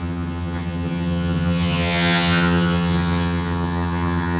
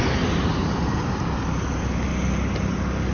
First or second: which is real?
second